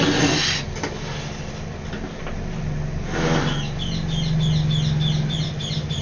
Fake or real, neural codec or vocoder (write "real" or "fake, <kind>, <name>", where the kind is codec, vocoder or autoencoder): real